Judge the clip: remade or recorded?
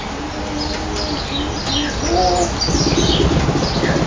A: recorded